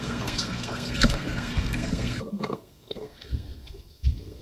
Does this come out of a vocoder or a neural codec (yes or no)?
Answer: yes